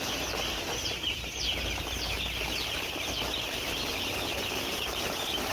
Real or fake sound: fake